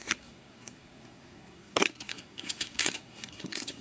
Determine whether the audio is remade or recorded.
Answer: remade